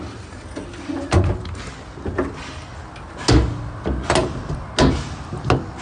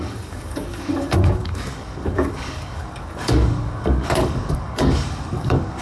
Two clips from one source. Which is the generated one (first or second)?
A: second